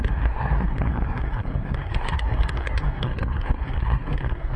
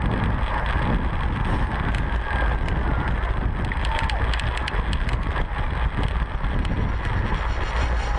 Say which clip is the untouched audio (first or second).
second